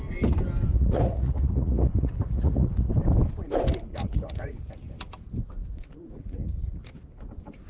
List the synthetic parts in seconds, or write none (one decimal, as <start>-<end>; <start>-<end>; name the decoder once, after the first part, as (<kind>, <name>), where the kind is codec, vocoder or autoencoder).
0.7-2.9 (vocoder, Vocos); 3.9-4.7; 5.6-6.8